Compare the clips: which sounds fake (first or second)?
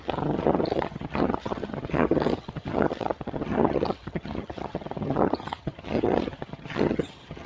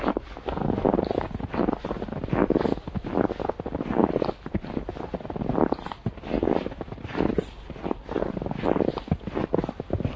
first